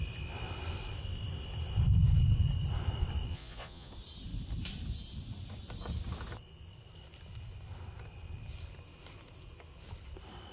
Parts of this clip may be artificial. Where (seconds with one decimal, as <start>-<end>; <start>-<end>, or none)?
3.3-3.9